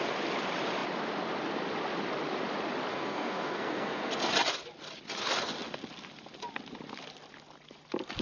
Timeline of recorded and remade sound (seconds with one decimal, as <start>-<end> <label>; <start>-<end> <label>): 0.0-2.9 recorded; 2.9-4.1 remade; 4.1-8.2 recorded